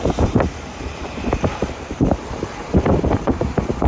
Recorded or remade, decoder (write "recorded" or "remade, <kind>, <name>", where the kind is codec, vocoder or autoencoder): remade, vocoder, BigVGAN v2